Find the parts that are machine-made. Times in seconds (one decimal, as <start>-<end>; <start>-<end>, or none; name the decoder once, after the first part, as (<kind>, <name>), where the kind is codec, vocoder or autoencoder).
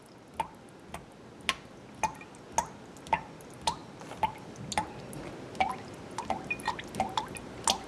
none